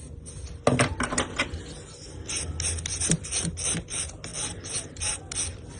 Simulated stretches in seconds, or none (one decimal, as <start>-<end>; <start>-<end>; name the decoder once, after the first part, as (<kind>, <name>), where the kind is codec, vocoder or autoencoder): none